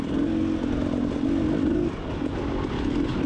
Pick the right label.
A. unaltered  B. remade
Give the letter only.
A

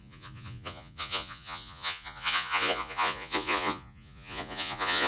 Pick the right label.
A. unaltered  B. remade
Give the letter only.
B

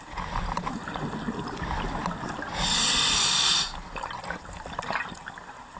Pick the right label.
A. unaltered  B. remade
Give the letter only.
A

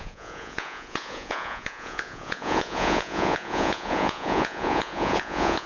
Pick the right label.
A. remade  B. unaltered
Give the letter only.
A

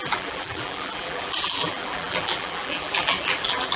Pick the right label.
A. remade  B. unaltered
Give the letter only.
A